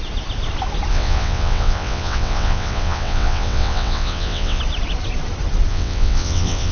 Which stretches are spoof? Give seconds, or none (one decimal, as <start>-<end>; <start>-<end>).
0.9-4.6; 5.7-6.7